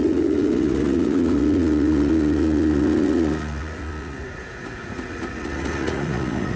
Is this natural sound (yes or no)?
no